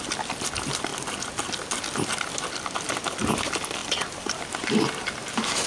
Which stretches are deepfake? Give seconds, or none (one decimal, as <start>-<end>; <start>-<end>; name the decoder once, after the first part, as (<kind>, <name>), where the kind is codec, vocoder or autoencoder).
none